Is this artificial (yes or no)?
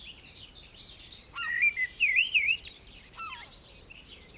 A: yes